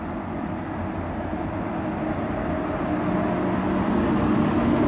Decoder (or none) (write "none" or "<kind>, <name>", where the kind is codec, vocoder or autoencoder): none